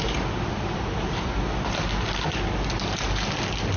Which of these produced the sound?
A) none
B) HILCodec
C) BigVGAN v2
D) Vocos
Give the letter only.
A